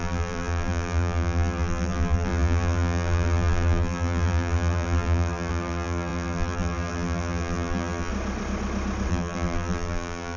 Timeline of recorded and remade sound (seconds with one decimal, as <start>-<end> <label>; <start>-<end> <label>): 0.0-8.1 remade; 8.1-9.1 recorded; 9.1-10.4 remade